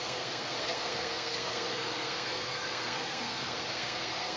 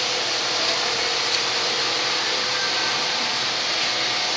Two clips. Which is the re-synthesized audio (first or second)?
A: first